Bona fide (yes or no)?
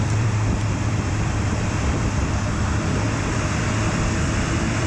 no